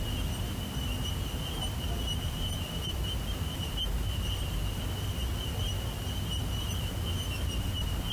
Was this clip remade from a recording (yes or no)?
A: no